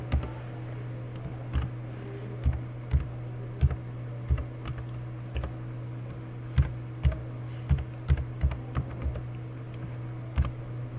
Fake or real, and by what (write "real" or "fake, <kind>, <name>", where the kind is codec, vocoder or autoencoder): real